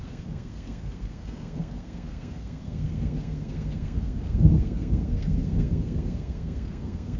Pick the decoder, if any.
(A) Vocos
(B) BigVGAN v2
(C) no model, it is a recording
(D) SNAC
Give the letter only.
D